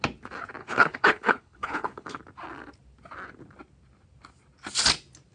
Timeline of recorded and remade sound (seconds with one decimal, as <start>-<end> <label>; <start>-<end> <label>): 0.0-0.6 recorded; 0.6-2.2 remade; 2.2-5.3 recorded